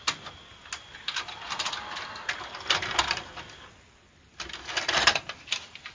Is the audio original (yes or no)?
yes